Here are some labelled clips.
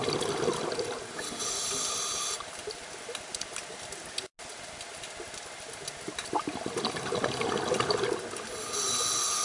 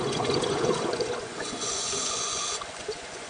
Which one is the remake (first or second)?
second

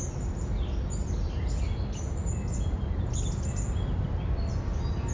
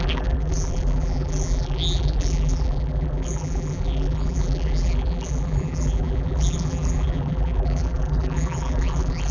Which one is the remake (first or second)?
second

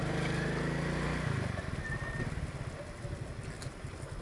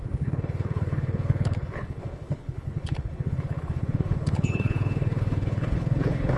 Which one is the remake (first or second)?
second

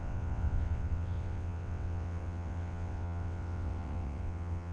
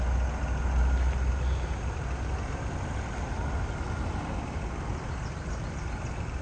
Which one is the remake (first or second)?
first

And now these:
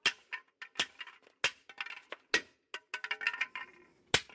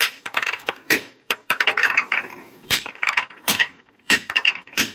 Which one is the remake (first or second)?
second